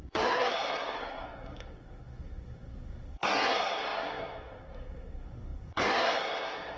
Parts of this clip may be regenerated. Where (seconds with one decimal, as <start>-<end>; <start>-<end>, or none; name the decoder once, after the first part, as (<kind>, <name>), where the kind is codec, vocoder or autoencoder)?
0.0-6.8 (codec, SNAC)

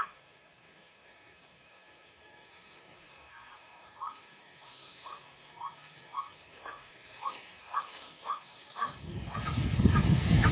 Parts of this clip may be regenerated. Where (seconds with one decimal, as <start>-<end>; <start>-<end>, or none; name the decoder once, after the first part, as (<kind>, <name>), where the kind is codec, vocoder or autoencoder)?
0.0-10.5 (codec, SNAC)